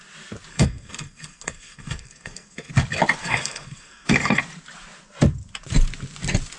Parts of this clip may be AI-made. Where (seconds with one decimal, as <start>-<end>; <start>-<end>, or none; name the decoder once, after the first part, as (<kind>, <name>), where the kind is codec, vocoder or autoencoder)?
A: 0.5-2.7 (codec, SNAC); 3.2-4.4